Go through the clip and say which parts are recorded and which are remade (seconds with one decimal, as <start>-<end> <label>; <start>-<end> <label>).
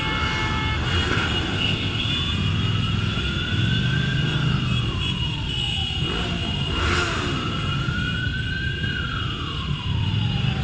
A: 0.0-1.5 recorded; 1.5-2.1 remade; 2.1-10.6 recorded